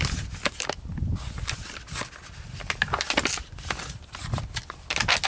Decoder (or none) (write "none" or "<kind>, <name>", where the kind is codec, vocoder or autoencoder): none